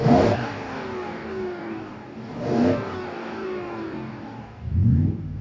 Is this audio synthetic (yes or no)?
yes